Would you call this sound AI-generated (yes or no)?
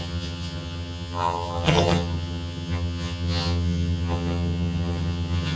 yes